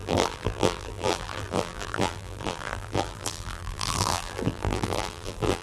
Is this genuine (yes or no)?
no